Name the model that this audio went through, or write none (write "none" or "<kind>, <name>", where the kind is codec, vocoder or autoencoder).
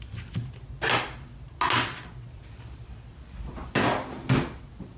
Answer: none